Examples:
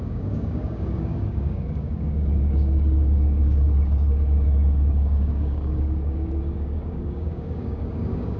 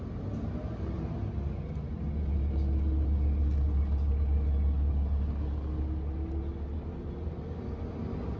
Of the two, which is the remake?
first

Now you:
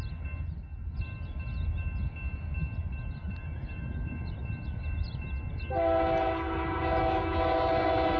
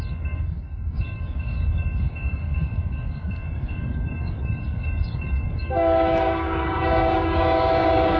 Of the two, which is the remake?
second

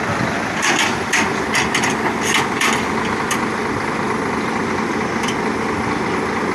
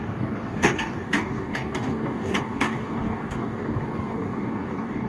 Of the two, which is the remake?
second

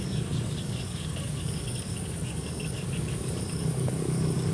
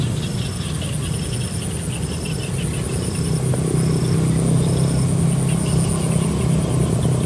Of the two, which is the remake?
first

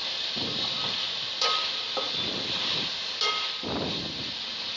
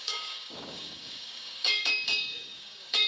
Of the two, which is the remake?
second